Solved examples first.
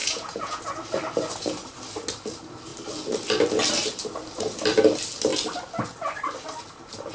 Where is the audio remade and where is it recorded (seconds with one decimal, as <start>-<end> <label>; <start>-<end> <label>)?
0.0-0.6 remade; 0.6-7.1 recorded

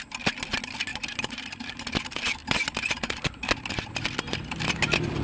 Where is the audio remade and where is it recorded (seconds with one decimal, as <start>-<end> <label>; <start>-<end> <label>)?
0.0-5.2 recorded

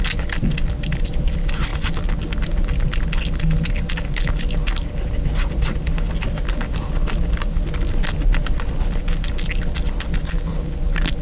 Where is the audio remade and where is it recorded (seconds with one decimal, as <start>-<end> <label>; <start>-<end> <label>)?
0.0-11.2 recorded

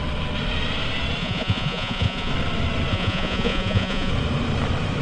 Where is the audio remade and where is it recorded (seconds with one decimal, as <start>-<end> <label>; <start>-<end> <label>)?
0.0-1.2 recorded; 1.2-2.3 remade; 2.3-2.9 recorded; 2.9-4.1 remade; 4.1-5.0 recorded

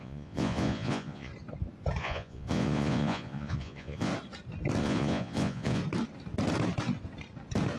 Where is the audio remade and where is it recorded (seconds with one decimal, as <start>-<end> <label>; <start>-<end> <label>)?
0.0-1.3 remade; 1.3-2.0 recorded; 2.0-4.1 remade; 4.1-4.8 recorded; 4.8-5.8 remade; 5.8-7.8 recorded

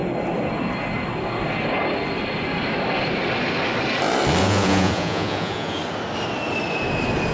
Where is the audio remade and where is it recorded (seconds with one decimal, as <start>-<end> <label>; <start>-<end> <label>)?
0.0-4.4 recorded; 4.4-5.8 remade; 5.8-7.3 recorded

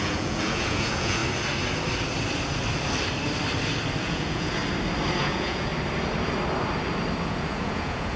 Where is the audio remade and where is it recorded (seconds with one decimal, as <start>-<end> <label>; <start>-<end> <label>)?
0.0-1.2 remade; 1.2-4.0 recorded; 4.0-4.6 remade; 4.6-5.2 recorded; 5.2-5.7 remade; 5.7-7.2 recorded; 7.2-8.2 remade

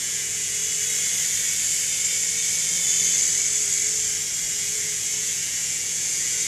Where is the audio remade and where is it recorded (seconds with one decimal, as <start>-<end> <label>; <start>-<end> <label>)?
0.0-0.6 remade; 0.6-4.5 recorded; 4.5-6.5 remade